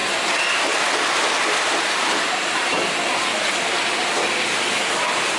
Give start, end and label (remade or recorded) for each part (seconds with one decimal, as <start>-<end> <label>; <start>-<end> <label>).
0.0-1.4 recorded; 1.4-4.1 remade; 4.1-5.4 recorded